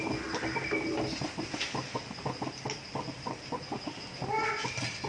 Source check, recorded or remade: recorded